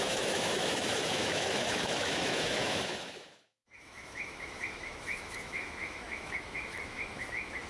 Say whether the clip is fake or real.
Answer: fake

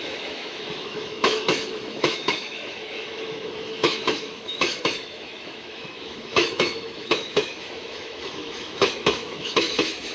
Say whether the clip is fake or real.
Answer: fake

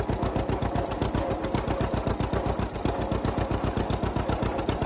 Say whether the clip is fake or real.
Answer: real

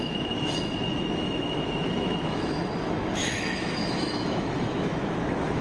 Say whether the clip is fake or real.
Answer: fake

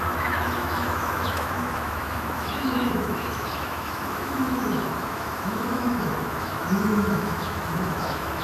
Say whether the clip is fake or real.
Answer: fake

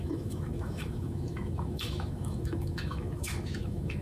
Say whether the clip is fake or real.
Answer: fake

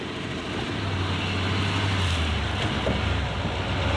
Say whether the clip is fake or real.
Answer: real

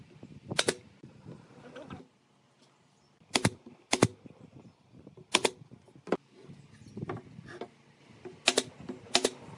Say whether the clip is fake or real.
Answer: real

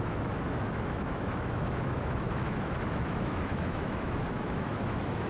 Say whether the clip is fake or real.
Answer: fake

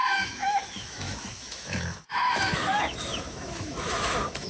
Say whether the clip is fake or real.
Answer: fake